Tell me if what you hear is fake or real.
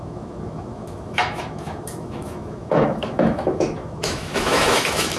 fake